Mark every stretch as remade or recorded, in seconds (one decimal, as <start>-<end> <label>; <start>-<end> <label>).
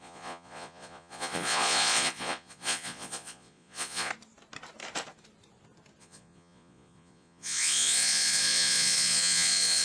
0.0-4.1 remade; 4.1-6.0 recorded; 6.0-9.8 remade